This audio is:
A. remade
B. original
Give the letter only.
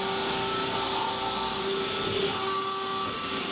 B